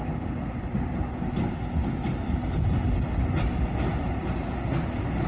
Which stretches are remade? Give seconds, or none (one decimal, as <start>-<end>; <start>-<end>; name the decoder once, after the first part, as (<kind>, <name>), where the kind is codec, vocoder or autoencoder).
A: none